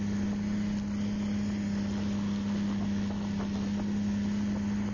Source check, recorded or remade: recorded